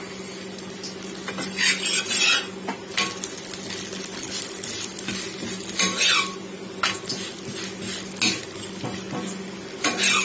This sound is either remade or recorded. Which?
recorded